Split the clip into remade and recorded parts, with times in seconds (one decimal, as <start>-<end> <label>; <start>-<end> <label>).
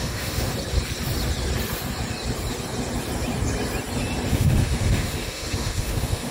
0.0-0.5 remade; 0.5-4.3 recorded; 4.3-6.3 remade